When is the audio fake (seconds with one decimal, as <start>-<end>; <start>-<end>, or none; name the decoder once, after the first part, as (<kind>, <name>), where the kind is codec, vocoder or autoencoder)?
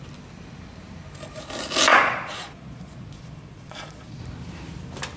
1.9-4.2 (vocoder, Vocos)